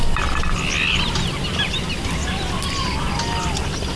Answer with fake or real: real